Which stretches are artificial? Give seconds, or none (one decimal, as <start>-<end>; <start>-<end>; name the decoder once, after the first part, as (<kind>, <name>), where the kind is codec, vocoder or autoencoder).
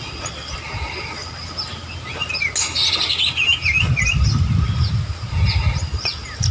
none